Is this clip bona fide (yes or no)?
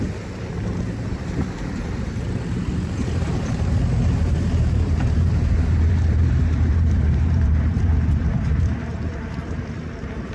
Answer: no